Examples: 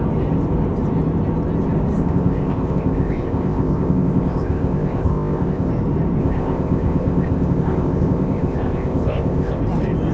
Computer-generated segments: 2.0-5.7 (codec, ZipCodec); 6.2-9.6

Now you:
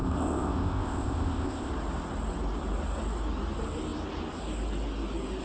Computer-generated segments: 0.0-1.7 (codec, ZipCodec)

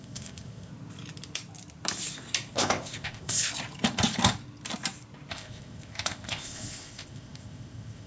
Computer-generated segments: 0.0-0.7 (codec, ZipCodec); 2.5-3.5; 5.3-8.1

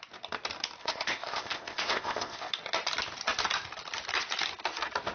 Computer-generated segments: 0.8-2.5 (codec, ZipCodec)

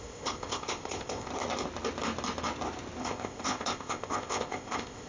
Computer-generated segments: 0.0-1.3 (codec, ZipCodec); 3.0-5.1